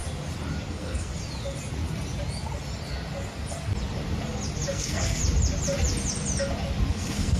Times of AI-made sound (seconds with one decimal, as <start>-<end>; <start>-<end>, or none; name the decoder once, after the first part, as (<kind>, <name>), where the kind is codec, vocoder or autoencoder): 0.7-1.1 (codec, SNAC); 4.7-5.2; 6.9-7.4